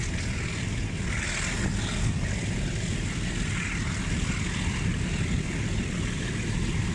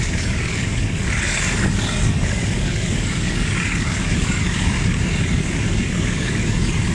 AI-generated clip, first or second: second